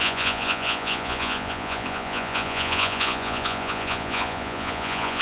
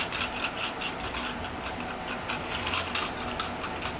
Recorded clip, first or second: second